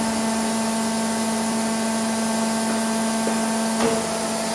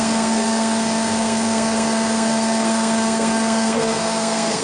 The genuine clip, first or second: first